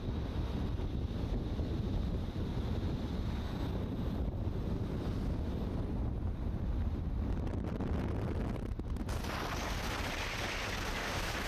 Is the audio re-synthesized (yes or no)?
no